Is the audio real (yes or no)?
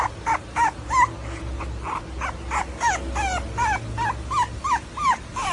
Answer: yes